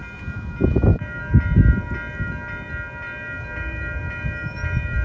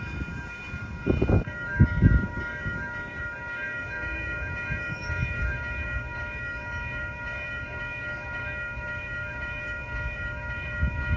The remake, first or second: second